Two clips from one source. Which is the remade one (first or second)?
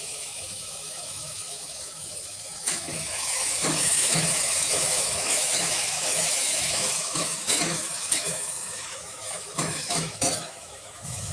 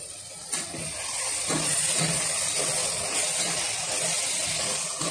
first